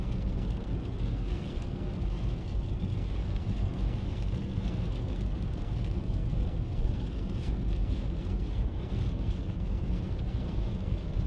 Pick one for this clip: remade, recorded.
remade